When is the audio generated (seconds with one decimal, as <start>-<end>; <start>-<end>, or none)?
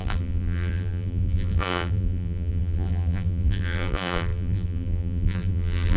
0.0-6.0